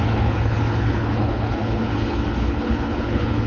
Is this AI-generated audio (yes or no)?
yes